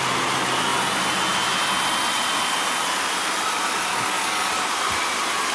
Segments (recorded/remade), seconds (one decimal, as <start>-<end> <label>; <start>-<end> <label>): 0.0-3.9 recorded; 3.9-4.7 remade; 4.7-5.5 recorded